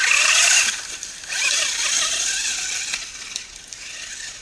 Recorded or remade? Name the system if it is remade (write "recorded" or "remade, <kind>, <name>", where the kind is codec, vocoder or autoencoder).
recorded